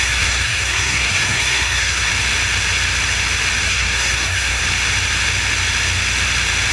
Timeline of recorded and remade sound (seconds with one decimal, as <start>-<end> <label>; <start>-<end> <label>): 0.0-2.1 remade; 2.1-3.6 recorded; 3.6-4.6 remade; 4.6-6.7 recorded